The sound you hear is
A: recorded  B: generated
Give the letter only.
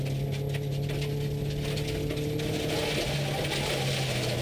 A